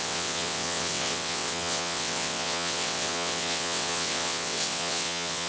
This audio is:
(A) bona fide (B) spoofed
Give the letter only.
B